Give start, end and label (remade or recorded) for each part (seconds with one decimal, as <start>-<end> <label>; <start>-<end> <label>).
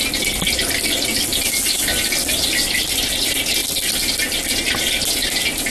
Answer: 0.0-5.7 recorded